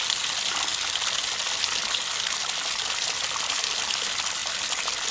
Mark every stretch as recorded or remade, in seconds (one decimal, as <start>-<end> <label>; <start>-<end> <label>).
0.0-5.1 recorded